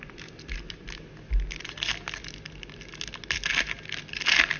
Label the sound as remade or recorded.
recorded